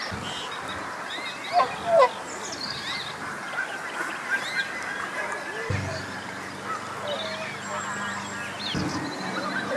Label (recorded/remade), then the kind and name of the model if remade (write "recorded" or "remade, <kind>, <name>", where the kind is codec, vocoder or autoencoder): recorded